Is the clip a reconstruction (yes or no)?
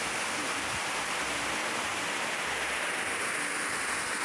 no